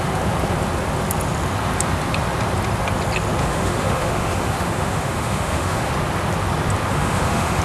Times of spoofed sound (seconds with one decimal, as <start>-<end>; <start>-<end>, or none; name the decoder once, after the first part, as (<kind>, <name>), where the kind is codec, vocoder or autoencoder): 3.4-5.9 (autoencoder, DAC-VAE); 6.9-7.6